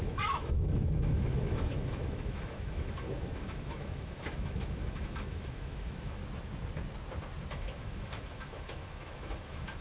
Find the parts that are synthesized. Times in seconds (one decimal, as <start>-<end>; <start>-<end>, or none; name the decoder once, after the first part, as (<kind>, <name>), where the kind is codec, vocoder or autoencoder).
0.0-6.2 (autoencoder, DAC-VAE); 7.5-9.8